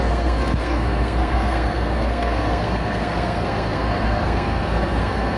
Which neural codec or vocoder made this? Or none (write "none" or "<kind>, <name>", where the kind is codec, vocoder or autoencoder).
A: codec, SNAC